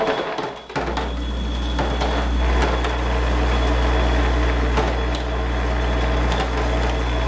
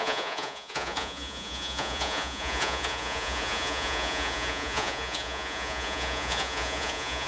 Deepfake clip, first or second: second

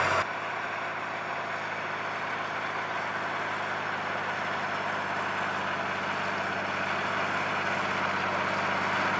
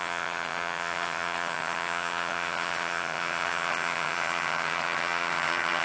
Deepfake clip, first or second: second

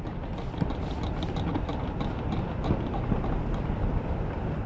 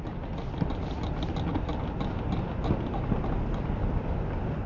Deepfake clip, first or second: first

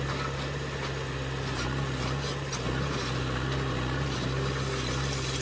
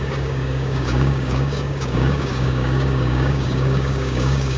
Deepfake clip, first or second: second